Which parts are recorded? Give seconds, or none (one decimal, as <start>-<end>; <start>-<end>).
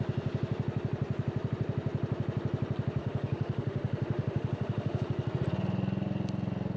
0.0-3.0; 5.0-6.8